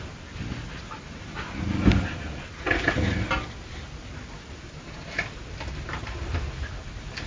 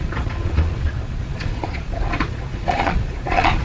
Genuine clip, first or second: first